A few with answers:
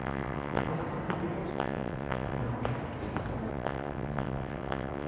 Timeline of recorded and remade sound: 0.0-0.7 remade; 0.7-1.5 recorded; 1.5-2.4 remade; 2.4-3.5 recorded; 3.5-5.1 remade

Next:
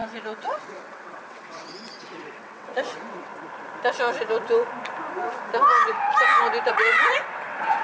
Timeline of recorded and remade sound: 0.0-3.3 remade; 3.3-6.7 recorded; 6.7-7.8 remade

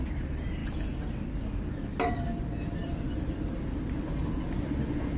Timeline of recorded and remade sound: 0.0-2.8 recorded; 2.8-3.5 remade; 3.5-5.2 recorded

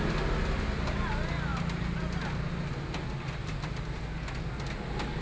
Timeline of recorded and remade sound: 0.0-5.2 recorded

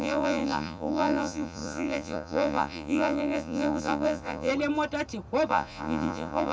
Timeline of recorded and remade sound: 0.0-4.5 remade; 4.5-5.5 recorded; 5.5-6.5 remade

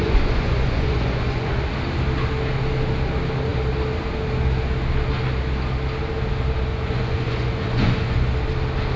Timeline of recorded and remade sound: 0.0-1.5 remade; 1.5-6.7 recorded; 6.7-8.3 remade; 8.3-9.0 recorded

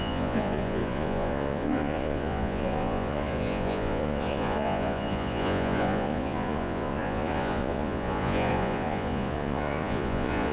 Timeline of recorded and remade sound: 0.0-10.5 remade

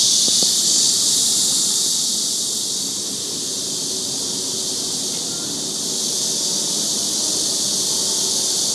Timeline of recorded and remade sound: 0.0-0.4 recorded; 0.4-2.1 remade; 2.1-8.7 recorded